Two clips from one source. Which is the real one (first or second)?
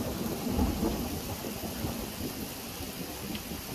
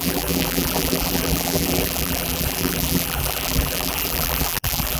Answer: first